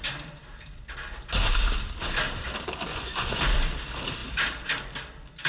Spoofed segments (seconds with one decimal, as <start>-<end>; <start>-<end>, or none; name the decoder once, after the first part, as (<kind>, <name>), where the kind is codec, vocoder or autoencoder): 2.9-3.4 (vocoder, Vocos)

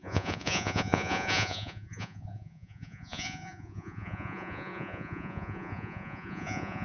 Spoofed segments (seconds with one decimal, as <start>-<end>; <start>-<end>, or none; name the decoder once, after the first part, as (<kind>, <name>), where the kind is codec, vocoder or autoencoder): 0.0-6.8 (vocoder, Vocos)

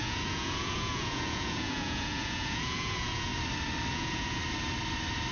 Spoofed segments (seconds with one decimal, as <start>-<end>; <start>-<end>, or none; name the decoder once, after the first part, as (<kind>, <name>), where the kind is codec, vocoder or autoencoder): 0.0-3.3 (vocoder, Vocos); 3.9-4.4

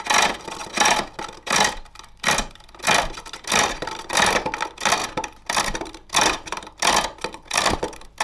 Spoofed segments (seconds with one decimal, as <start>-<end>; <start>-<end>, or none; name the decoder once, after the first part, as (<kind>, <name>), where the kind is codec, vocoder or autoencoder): none

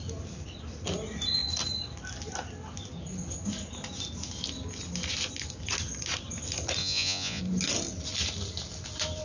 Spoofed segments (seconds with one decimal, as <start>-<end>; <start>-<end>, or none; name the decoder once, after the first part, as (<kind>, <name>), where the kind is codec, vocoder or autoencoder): 6.8-7.4 (vocoder, Vocos)

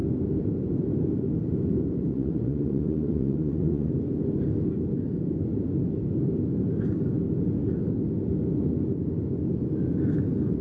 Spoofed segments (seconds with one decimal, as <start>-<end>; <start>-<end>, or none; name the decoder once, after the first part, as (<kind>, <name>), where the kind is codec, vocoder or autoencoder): 2.1-3.9 (vocoder, Vocos)